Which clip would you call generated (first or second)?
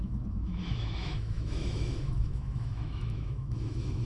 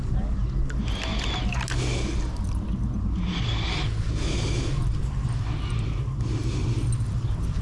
first